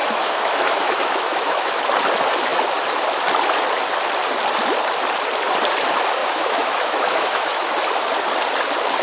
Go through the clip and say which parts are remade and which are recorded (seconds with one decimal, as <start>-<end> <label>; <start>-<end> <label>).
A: 0.0-1.8 remade; 1.8-6.2 recorded; 6.2-7.7 remade; 7.7-9.0 recorded